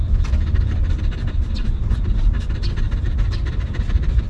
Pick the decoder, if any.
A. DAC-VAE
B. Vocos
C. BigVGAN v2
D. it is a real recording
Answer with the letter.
C